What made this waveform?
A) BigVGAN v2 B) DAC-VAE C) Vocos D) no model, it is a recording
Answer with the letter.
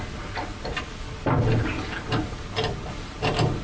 D